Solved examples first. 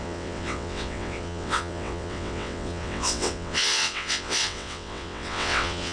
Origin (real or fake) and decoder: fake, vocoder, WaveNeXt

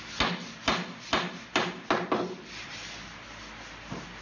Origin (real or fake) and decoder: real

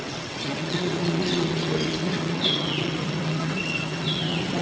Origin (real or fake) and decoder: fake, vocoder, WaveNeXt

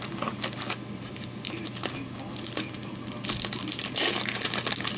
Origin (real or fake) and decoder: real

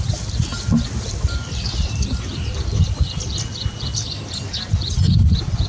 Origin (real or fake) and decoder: real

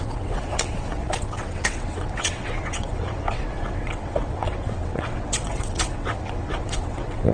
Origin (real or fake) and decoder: fake, vocoder, WaveNeXt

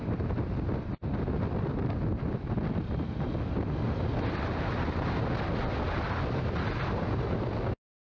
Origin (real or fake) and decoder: real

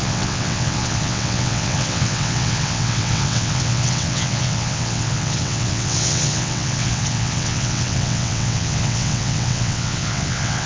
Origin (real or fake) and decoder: fake, vocoder, WaveNeXt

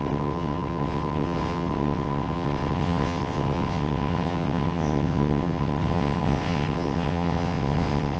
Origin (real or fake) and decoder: fake, vocoder, WaveNeXt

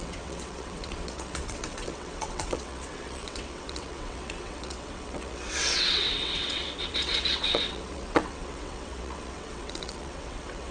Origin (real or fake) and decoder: fake, vocoder, WaveNeXt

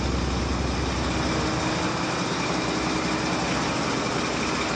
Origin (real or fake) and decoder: real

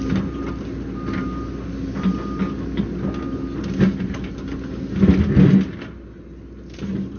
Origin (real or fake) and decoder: real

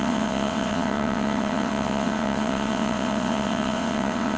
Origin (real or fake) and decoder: fake, vocoder, WaveNeXt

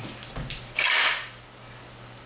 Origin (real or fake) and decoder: real